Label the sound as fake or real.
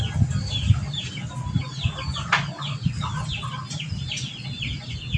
real